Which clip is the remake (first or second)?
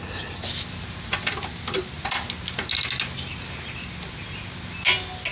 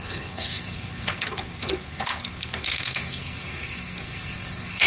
second